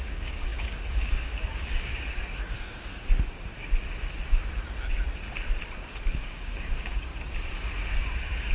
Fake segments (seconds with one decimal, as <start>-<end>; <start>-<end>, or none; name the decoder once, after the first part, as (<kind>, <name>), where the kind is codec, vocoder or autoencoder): 0.0-1.9 (codec, DAC); 2.4-3.5; 6.0-7.1; 8.0-8.5